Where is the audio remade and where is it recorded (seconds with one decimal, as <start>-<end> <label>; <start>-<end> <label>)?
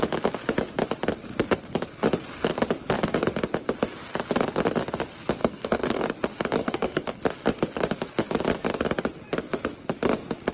0.0-5.4 recorded; 5.4-6.0 remade; 6.0-6.6 recorded; 6.6-7.2 remade; 7.2-10.5 recorded